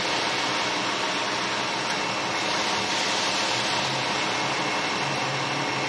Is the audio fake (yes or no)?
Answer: no